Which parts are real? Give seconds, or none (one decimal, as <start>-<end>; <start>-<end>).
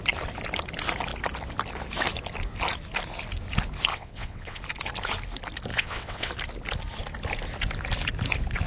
0.0-3.9; 4.6-5.7; 6.3-8.7